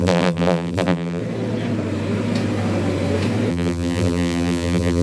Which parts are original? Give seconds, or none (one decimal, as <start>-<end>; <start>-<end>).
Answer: 1.2-3.5